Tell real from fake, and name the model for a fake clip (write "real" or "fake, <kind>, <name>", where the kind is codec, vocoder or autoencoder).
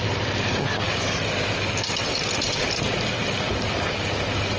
real